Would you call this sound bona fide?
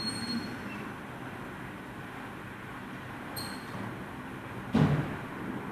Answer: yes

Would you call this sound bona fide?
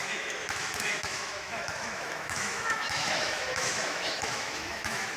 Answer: no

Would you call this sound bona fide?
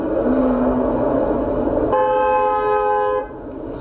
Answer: yes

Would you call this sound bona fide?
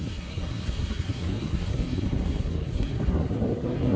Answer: no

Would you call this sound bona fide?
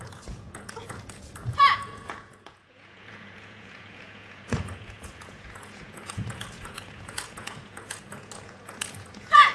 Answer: no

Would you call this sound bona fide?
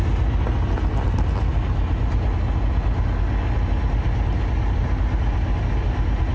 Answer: yes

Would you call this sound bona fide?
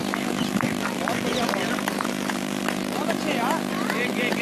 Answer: no